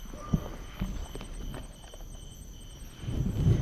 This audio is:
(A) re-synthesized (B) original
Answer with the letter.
B